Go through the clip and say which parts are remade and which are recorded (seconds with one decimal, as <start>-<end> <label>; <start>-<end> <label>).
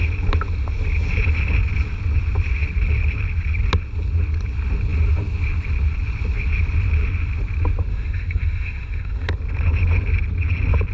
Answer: 0.0-7.9 recorded; 7.9-9.3 remade; 9.3-10.9 recorded